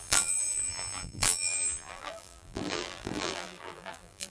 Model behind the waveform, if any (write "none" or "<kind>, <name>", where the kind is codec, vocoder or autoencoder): vocoder, BigVGAN v2